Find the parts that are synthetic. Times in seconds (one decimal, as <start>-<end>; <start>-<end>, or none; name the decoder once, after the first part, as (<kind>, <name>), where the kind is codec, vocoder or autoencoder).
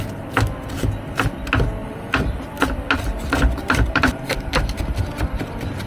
1.8-4.8 (vocoder, BigVGAN v2)